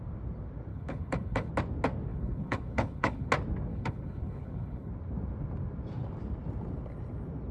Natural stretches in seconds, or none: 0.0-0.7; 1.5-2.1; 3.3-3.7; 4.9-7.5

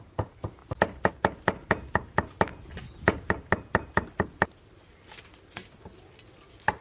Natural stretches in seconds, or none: 0.0-6.8

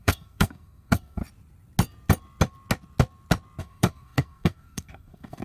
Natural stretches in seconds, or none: 1.2-3.6

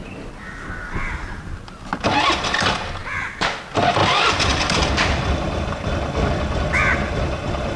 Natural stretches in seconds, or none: 0.0-4.0; 5.6-7.8

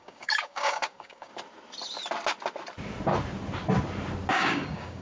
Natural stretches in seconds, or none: 1.3-4.3

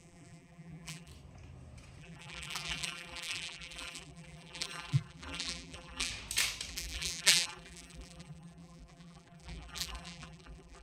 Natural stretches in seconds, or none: 1.1-2.0; 6.1-6.7